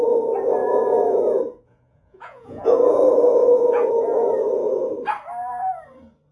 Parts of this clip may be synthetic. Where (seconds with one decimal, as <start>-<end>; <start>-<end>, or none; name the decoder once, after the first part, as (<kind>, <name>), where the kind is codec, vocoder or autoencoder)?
0.6-3.0 (vocoder, Vocos); 3.4-3.9